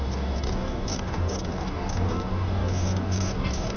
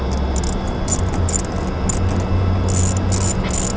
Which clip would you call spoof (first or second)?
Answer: first